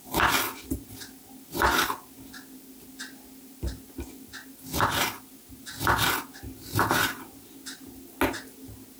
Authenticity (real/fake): real